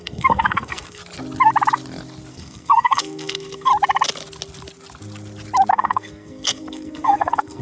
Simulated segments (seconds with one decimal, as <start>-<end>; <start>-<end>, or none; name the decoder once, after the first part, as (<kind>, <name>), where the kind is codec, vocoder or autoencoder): 0.0-1.0 (codec, SNAC); 2.3-3.7; 5.7-7.6